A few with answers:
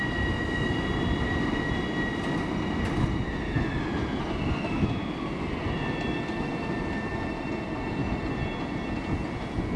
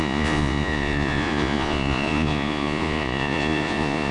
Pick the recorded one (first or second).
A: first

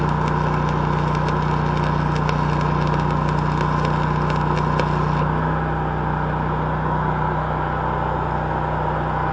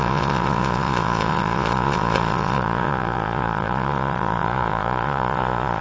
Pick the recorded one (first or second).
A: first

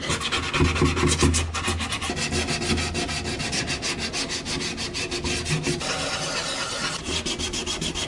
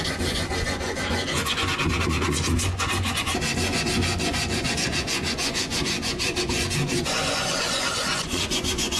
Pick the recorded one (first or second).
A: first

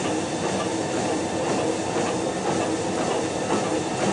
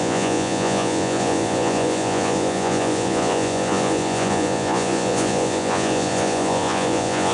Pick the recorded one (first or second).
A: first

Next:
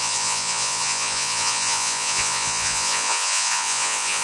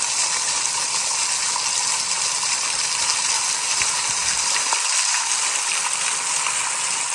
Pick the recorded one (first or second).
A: second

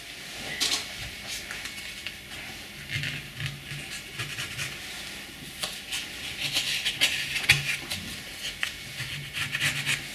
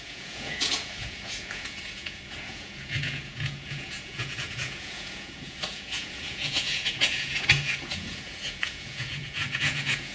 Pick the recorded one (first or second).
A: first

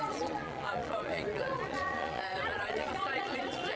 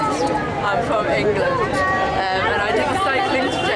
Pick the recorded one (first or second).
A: second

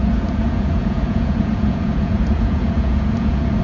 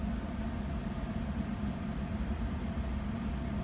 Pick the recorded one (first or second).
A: second